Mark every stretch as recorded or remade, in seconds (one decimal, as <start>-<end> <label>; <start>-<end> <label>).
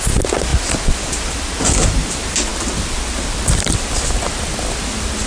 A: 0.0-5.3 recorded